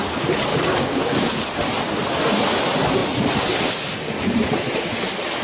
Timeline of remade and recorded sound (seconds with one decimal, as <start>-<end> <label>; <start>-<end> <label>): 0.0-0.5 recorded; 0.5-1.0 remade; 1.0-5.4 recorded